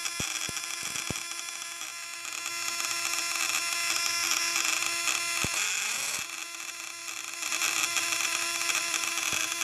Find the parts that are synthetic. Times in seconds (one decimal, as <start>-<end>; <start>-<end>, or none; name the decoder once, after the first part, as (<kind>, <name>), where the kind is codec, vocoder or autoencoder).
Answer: 7.0-9.0 (vocoder, BigVGAN v2)